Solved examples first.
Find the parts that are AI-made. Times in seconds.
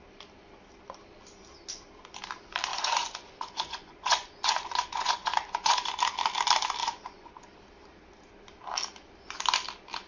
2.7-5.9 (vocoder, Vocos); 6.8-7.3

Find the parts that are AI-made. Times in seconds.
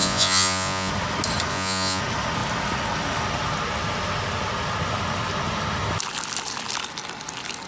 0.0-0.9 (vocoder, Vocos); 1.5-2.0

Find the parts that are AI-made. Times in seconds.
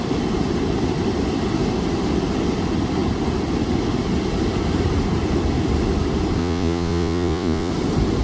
6.4-7.7 (vocoder, Vocos)